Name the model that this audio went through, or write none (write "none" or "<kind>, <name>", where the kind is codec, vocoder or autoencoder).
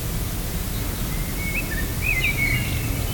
none